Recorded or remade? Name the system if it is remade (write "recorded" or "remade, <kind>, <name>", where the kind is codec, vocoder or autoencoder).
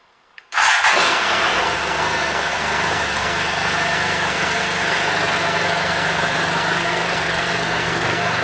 remade, codec, SNAC